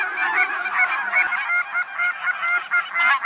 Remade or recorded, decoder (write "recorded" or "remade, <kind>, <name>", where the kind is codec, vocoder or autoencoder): recorded